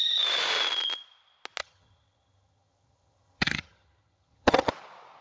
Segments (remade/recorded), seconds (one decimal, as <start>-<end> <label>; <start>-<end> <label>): 0.0-1.6 recorded; 1.6-4.7 remade; 4.7-5.2 recorded